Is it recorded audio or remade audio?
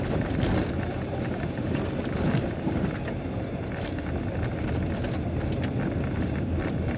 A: recorded